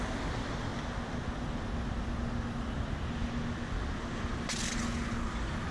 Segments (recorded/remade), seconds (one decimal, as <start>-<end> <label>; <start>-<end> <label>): 0.0-5.7 recorded